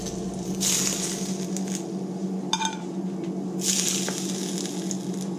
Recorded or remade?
recorded